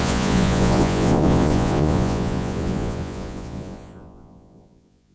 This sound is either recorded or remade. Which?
remade